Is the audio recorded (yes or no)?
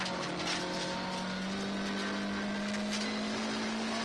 yes